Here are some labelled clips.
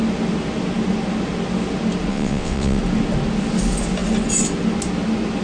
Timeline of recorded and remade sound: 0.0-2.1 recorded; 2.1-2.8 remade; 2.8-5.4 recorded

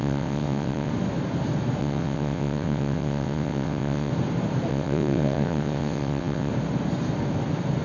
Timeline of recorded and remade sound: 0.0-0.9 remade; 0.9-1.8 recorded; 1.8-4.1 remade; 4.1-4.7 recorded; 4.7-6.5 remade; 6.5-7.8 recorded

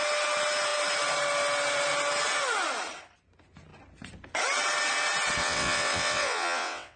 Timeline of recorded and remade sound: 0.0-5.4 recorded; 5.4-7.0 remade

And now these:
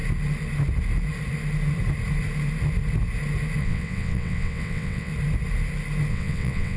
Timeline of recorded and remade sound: 0.0-3.6 recorded; 3.6-5.1 remade; 5.1-6.1 recorded; 6.1-6.8 remade

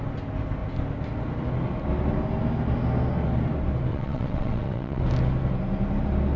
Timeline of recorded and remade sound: 0.0-3.9 recorded; 3.9-5.0 remade; 5.0-6.4 recorded

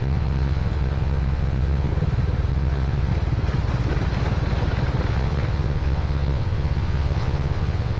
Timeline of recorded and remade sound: 0.0-1.9 remade; 1.9-2.5 recorded; 2.5-3.1 remade; 3.1-5.1 recorded; 5.1-8.0 remade